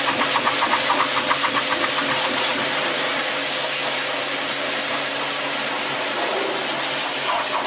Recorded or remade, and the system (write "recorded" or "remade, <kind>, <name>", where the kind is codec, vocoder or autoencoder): recorded